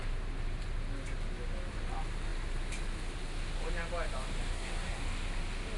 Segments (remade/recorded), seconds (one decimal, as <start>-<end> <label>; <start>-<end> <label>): 0.0-4.5 recorded; 4.5-5.0 remade; 5.0-5.8 recorded